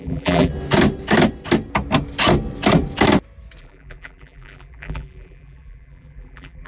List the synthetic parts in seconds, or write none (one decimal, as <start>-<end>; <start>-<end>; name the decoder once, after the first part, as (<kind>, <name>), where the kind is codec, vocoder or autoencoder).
0.0-0.5 (vocoder, BigVGAN v2); 3.6-6.7